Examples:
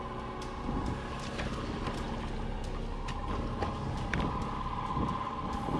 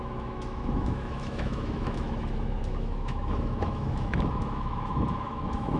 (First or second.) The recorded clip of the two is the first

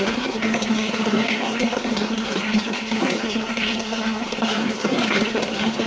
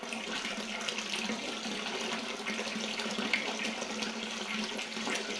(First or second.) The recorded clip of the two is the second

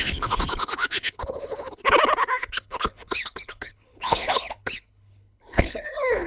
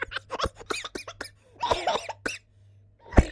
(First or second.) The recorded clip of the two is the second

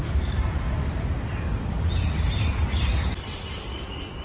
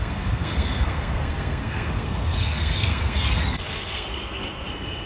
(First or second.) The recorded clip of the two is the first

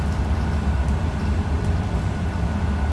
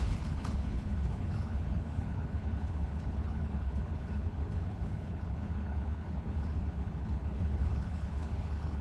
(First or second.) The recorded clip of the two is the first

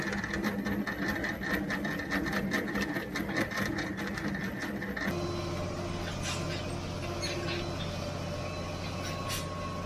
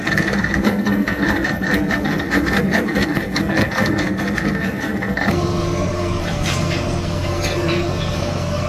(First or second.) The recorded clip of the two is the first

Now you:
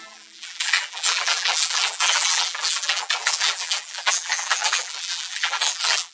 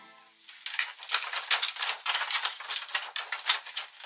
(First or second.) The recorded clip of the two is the second